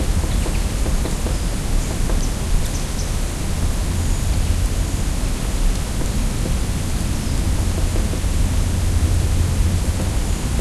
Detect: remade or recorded recorded